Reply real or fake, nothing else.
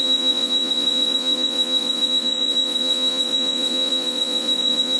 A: fake